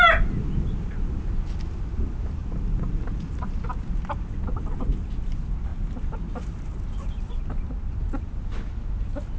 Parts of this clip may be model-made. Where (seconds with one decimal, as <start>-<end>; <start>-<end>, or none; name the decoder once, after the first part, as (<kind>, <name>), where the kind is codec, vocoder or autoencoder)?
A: none